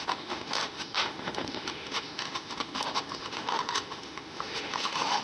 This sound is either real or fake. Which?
fake